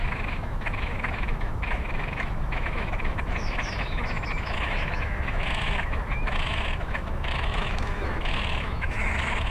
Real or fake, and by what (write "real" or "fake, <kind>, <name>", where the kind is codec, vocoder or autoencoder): fake, autoencoder, DAC-VAE